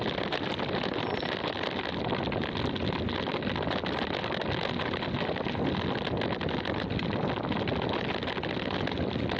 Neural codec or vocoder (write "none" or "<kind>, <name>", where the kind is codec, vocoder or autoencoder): none